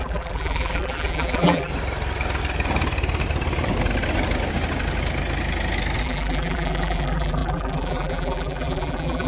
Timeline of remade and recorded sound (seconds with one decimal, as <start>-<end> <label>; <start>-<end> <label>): 0.0-1.7 remade; 1.7-6.0 recorded; 6.0-9.3 remade